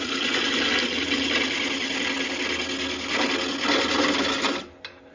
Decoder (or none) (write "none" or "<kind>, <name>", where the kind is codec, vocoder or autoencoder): none